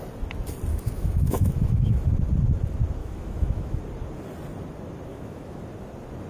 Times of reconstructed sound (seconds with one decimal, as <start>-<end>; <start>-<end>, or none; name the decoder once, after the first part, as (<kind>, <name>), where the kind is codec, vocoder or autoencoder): 0.7-2.1 (autoencoder, DAC-VAE); 3.0-3.8; 5.1-5.6